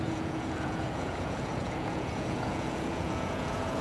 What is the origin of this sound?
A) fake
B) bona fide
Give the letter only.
A